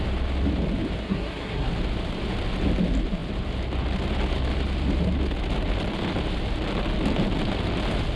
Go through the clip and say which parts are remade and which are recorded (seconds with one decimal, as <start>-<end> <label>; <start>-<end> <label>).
0.0-1.0 recorded; 1.0-1.7 remade; 1.7-8.2 recorded